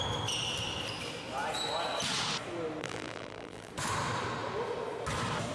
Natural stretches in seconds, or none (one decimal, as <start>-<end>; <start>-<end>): 0.0-2.8; 3.7-5.5